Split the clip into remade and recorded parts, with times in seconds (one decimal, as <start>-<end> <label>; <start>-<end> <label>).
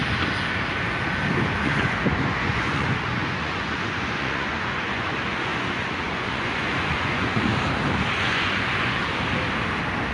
0.0-1.6 recorded; 1.6-7.5 remade; 7.5-8.1 recorded; 8.1-9.0 remade; 9.0-10.1 recorded